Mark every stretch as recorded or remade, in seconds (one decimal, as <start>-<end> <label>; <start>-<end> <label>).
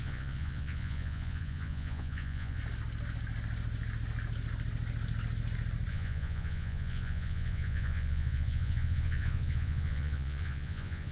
0.0-2.6 remade; 2.6-5.9 recorded; 5.9-11.1 remade